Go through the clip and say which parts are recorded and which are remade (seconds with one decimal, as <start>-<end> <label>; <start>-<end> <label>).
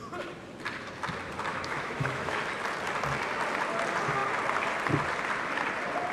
0.0-1.5 recorded; 1.5-2.4 remade; 2.4-6.1 recorded